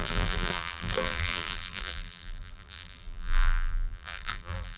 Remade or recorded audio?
remade